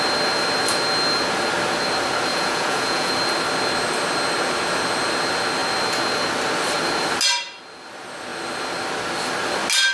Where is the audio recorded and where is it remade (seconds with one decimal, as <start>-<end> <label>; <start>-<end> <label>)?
0.0-2.3 recorded; 2.3-3.1 remade; 3.1-9.9 recorded